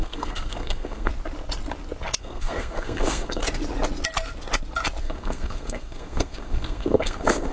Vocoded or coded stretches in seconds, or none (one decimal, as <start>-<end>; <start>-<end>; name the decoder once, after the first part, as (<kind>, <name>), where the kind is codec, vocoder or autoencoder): 0.0-1.1 (codec, SNAC); 2.2-3.4; 5.0-7.5